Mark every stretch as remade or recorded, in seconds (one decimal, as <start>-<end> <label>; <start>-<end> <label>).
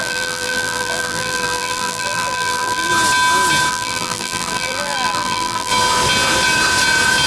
0.0-2.9 remade; 2.9-3.7 recorded; 3.7-5.7 remade; 5.7-7.3 recorded